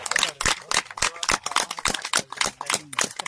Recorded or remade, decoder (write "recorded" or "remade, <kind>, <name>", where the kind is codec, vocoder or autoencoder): recorded